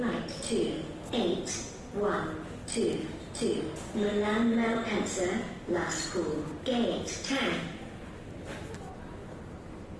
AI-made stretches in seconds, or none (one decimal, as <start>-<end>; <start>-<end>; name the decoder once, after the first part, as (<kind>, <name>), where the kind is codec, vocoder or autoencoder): none